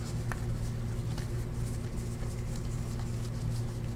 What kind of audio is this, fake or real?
real